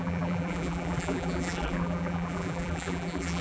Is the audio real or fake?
fake